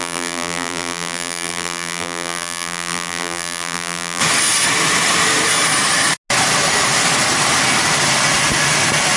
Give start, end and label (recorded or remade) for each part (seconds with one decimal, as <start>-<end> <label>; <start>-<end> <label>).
0.0-4.2 remade; 4.2-9.2 recorded